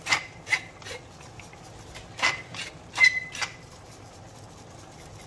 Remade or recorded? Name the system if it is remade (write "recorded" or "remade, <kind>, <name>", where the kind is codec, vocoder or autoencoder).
recorded